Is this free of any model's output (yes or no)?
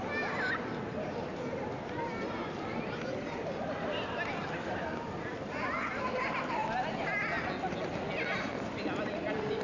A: yes